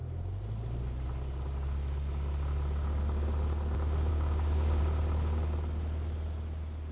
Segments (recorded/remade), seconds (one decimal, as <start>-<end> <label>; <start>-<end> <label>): 0.0-4.1 recorded; 4.1-4.8 remade; 4.8-6.9 recorded